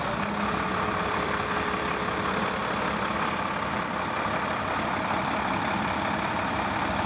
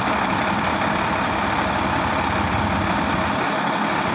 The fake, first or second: first